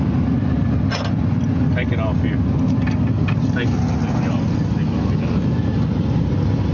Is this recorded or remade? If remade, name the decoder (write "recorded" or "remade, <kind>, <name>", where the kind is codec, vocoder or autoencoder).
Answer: recorded